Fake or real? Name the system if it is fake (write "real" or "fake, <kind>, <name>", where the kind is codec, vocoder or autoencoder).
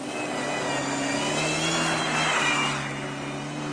real